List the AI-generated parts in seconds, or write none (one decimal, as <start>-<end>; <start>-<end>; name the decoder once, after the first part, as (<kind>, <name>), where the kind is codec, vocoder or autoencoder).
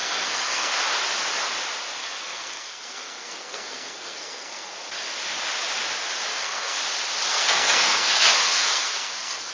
0.0-0.7 (codec, SNAC); 2.0-4.7; 6.3-6.8; 7.3-9.5